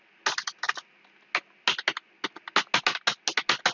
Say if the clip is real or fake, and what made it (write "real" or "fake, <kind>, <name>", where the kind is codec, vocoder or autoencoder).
real